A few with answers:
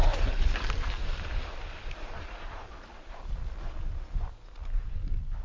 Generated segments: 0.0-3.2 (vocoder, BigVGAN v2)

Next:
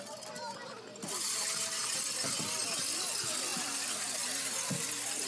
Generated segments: none

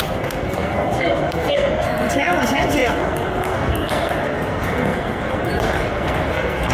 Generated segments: 0.0-6.7 (codec, SNAC)